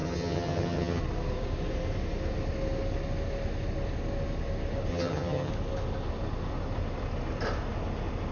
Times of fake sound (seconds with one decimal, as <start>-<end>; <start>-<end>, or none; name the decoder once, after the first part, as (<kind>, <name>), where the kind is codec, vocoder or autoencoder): 0.0-1.0 (vocoder, HiFi-GAN); 4.9-5.5